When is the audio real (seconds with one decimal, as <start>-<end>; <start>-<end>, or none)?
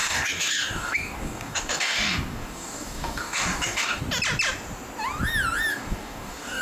4.0-5.7